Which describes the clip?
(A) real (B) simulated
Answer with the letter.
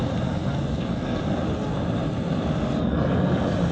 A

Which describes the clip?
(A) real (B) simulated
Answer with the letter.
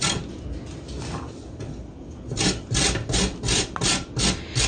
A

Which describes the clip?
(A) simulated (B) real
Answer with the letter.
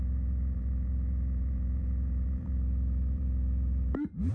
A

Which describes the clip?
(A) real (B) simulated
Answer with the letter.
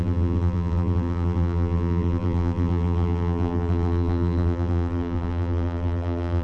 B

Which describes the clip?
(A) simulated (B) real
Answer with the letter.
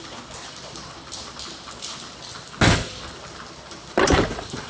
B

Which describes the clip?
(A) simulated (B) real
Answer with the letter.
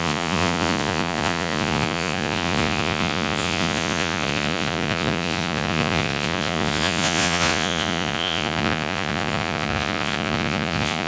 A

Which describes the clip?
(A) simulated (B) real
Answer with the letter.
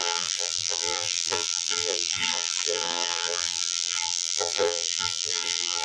A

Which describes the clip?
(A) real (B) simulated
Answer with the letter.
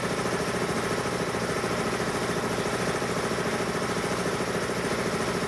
A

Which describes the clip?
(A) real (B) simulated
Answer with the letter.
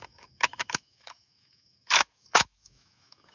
B